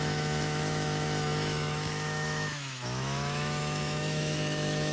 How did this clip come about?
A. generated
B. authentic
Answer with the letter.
A